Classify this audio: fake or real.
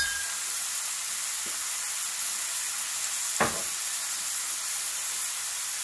real